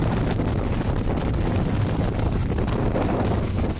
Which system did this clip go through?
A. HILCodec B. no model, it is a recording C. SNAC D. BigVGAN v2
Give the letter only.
B